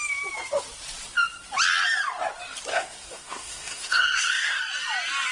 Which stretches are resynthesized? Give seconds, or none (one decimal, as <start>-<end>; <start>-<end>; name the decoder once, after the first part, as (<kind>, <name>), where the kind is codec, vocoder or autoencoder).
2.7-4.6 (codec, SNAC)